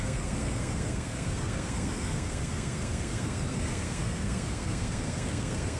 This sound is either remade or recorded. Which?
remade